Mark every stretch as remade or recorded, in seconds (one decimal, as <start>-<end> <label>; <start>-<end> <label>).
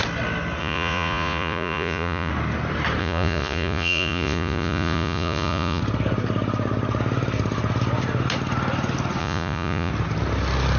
0.0-0.6 recorded; 0.6-2.3 remade; 2.3-3.0 recorded; 3.0-5.8 remade; 5.8-9.2 recorded; 9.2-9.9 remade; 9.9-10.8 recorded